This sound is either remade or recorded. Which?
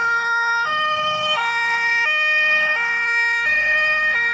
remade